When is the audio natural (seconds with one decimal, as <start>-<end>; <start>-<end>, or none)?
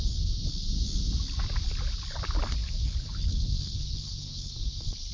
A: 0.0-2.6